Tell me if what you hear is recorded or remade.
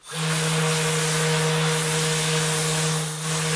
recorded